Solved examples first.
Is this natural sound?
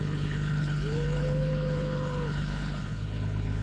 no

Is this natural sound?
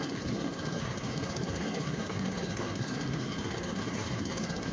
no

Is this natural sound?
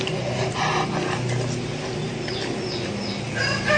yes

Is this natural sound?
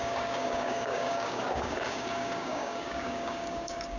no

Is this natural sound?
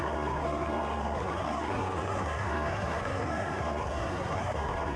no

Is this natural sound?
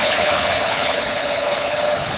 no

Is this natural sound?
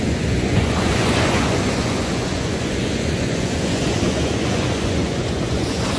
no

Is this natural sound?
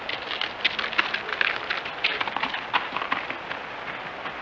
yes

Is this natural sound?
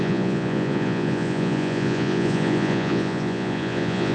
no